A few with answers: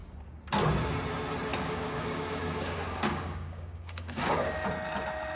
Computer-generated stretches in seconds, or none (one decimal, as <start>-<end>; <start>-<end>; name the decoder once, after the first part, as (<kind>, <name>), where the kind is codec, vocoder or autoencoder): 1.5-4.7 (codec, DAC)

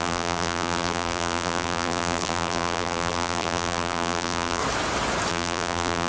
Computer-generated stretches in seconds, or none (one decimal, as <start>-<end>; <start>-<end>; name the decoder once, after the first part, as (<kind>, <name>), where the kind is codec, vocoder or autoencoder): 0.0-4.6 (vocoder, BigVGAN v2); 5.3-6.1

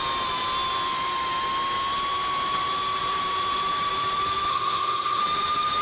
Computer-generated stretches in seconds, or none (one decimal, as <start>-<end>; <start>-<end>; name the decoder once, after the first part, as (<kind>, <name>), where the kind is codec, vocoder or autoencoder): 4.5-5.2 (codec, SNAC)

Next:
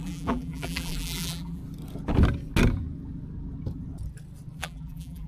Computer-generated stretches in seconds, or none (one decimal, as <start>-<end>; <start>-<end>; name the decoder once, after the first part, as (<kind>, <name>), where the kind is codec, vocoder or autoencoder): 0.0-1.6 (vocoder, BigVGAN v2); 4.6-5.3

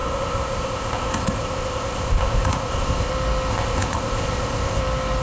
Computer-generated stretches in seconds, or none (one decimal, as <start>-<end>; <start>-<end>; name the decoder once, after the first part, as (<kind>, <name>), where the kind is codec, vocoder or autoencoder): 0.0-3.1 (codec, ZipCodec); 3.5-4.8

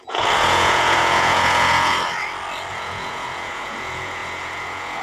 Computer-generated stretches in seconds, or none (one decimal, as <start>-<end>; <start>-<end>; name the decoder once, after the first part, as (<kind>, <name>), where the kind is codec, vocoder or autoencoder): 0.0-1.9 (vocoder, Vocos); 2.7-5.0

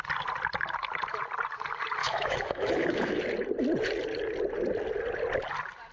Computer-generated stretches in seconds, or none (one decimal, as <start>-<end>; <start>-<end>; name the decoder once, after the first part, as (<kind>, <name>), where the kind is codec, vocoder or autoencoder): 2.0-3.2 (autoencoder, DAC-VAE)

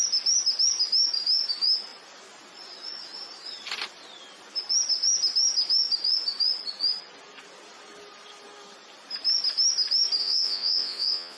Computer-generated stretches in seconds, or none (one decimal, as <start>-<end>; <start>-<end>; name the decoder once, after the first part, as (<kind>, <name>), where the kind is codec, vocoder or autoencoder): 10.2-11.4 (vocoder, Vocos)